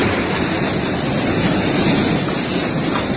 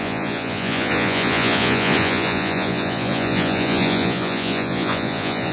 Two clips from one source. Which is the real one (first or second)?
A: first